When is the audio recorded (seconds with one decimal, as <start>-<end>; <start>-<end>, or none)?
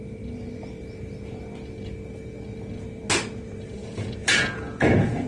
0.0-3.8